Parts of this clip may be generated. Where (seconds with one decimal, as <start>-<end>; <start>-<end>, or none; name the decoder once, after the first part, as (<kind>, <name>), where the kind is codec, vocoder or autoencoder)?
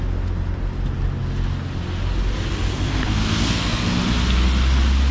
2.9-4.0 (codec, SNAC)